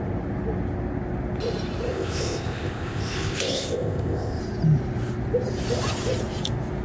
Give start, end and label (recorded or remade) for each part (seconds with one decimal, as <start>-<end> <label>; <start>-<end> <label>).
0.0-1.9 recorded; 1.9-4.4 remade; 4.4-6.8 recorded